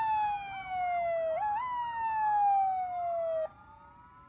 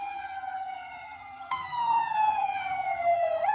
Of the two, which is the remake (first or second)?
second